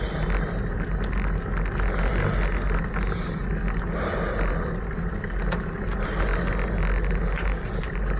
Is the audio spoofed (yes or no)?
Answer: no